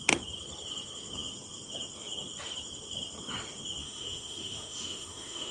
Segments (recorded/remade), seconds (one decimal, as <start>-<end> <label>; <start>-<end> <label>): 0.0-3.8 recorded; 3.8-5.5 remade